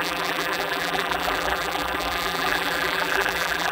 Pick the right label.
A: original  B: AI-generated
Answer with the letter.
B